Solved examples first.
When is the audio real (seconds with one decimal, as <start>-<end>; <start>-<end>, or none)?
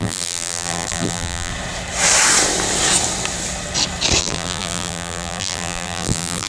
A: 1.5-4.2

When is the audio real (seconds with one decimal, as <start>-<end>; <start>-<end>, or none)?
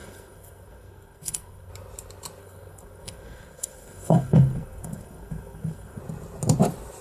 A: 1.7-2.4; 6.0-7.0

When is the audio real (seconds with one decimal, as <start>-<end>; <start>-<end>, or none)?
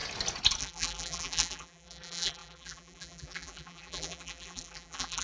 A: 0.0-0.6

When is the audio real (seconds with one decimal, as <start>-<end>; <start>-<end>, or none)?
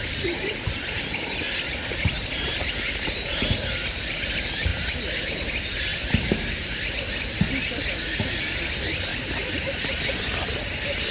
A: 0.0-5.9; 6.7-9.1; 9.9-11.1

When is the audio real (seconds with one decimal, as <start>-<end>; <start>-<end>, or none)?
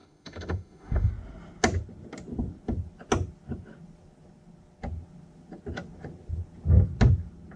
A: 1.1-7.6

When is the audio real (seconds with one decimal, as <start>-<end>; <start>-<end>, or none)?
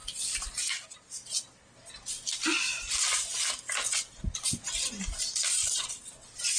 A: 0.0-6.6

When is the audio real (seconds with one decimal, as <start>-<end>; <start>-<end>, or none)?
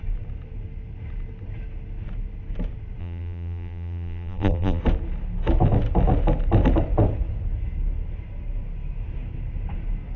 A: 0.0-3.0; 4.8-10.2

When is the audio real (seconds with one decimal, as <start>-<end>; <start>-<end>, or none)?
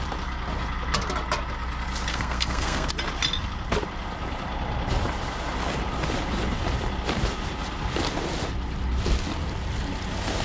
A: 0.0-2.1; 2.9-10.4